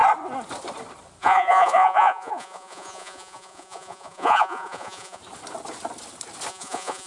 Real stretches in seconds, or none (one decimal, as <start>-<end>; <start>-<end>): 0.0-1.2; 5.2-6.5